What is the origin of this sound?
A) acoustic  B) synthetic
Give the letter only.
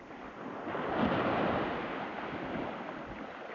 A